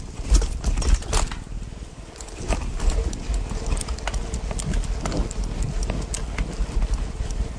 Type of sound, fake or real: real